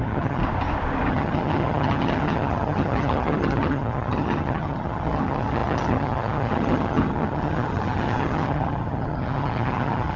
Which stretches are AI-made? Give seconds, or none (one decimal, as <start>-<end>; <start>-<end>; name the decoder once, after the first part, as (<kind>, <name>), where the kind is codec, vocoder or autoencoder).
0.0-0.4 (vocoder, HiFi-GAN); 1.1-10.2